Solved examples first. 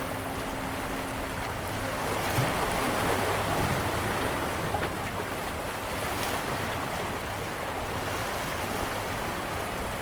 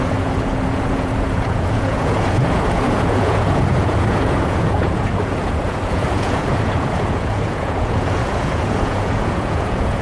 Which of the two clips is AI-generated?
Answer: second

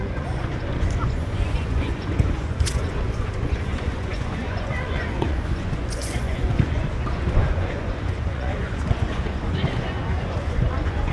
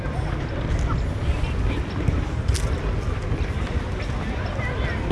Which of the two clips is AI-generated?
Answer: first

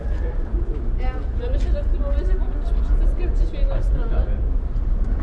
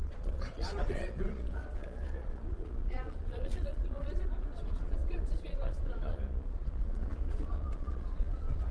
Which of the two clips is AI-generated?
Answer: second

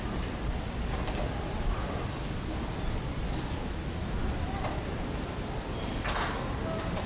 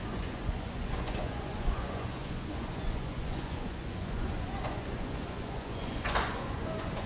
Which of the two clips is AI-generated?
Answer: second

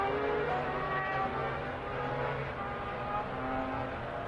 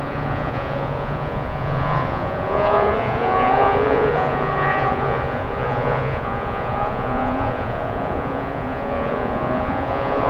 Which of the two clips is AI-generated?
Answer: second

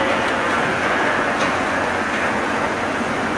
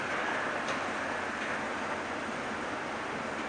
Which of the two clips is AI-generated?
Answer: first